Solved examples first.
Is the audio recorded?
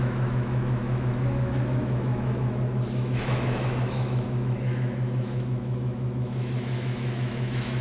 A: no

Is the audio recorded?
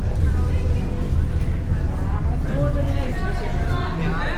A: yes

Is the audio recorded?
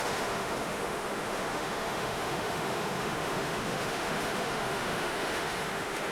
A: no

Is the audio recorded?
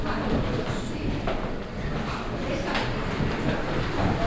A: yes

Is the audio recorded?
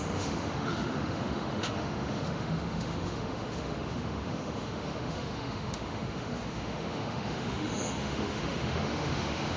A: no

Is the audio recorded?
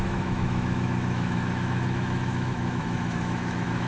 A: no